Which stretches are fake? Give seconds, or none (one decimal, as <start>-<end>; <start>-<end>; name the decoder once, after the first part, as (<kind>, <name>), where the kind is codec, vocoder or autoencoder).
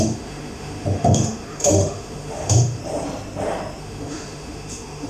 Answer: 0.0-2.8 (autoencoder, DAC-VAE); 3.8-5.1